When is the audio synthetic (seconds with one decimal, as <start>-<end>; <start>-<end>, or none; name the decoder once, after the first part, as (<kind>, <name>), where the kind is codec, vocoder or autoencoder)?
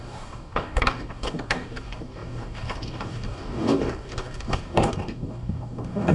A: 0.0-6.1 (codec, DAC)